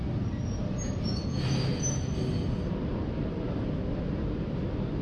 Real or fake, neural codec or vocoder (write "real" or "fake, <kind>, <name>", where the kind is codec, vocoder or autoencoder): real